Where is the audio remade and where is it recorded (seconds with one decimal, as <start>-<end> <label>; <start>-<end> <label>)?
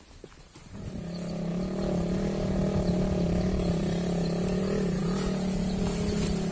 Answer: 0.0-5.0 recorded; 5.0-5.8 remade; 5.8-6.5 recorded